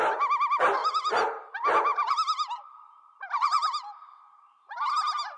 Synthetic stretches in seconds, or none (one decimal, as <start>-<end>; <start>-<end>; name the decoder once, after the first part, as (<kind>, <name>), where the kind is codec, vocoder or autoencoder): 0.8-1.5 (vocoder, BigVGAN v2)